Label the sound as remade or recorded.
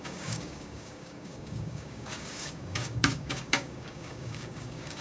remade